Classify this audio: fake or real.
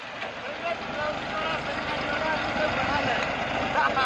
real